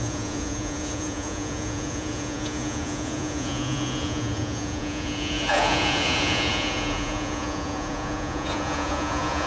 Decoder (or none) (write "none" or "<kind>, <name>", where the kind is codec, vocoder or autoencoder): vocoder, Vocos